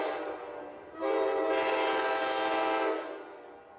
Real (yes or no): yes